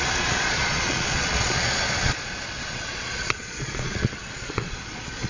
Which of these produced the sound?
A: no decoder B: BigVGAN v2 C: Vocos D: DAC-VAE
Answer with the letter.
C